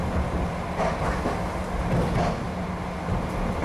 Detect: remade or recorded recorded